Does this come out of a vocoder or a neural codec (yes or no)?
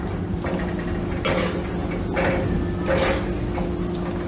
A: no